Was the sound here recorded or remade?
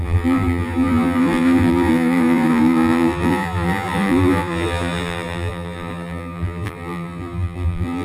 remade